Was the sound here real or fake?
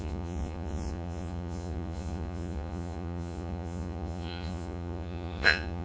fake